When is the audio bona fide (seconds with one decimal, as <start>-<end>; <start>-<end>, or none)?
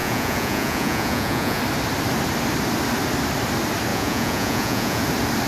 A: 1.6-3.9; 5.0-5.5